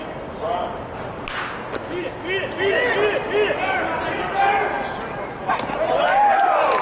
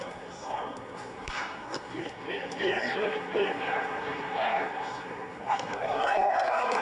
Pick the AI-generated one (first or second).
second